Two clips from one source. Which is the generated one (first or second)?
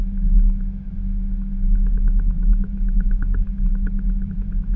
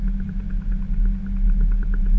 first